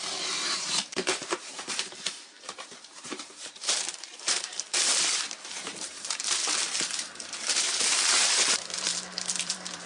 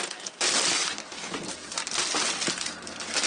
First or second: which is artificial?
first